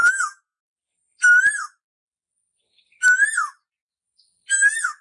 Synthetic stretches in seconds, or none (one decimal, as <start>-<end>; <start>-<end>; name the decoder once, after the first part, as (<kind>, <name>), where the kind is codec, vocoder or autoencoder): 0.0-0.6 (vocoder, BigVGAN v2)